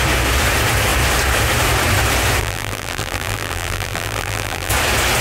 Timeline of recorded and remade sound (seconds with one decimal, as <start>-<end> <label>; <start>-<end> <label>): 0.0-2.4 recorded; 2.4-4.7 remade; 4.7-5.2 recorded